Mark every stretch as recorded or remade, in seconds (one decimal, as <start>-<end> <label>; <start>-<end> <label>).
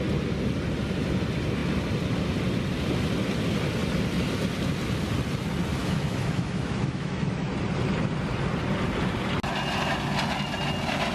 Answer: 0.0-5.8 recorded; 5.8-7.5 remade; 7.5-11.1 recorded